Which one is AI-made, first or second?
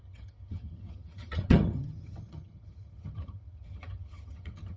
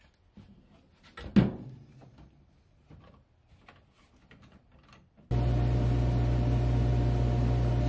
first